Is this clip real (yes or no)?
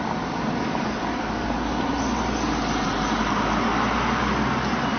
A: yes